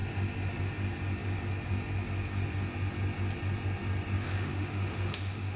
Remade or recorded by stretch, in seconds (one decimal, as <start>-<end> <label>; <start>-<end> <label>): 0.0-4.3 recorded; 4.3-5.6 remade